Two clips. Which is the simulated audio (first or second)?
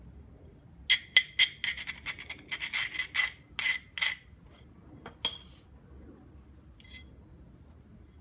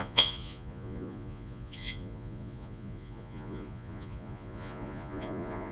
second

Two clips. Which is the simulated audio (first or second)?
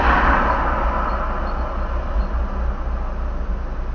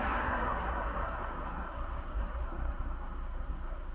second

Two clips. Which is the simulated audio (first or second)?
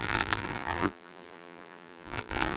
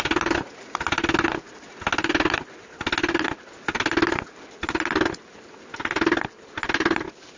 first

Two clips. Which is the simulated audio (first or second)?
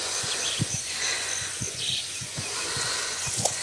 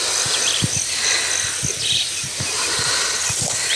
first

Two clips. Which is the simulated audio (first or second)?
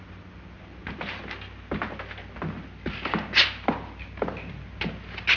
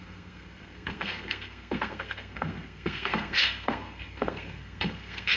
second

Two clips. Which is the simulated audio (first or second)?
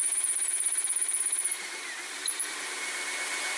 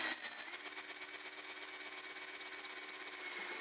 first